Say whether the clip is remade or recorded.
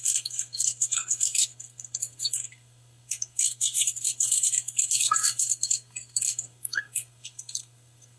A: remade